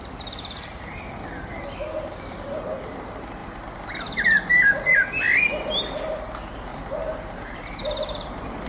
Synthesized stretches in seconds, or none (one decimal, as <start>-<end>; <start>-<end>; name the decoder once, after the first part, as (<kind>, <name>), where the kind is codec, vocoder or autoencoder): 6.7-8.7 (vocoder, BigVGAN v2)